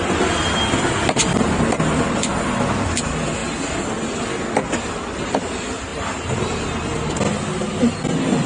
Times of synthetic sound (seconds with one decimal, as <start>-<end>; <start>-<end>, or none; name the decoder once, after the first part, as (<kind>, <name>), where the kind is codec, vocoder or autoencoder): none